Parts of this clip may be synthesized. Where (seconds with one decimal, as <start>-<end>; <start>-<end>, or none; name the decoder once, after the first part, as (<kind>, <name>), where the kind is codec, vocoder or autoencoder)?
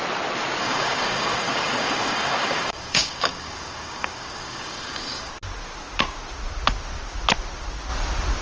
0.6-5.3 (codec, DAC)